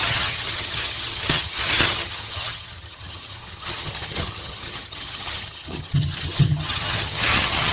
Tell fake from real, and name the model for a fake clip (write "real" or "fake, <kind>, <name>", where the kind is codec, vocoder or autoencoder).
fake, vocoder, HiFi-GAN